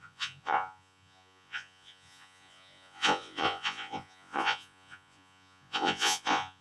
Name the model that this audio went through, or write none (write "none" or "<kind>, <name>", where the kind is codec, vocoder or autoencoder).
vocoder, Vocos